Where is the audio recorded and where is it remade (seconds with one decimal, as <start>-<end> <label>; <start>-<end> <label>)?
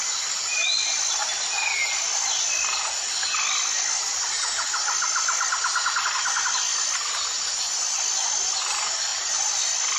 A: 0.0-10.0 recorded